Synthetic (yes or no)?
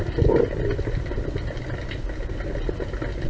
no